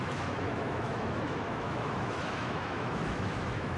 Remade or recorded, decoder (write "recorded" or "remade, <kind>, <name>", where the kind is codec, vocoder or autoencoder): remade, autoencoder, DAC-VAE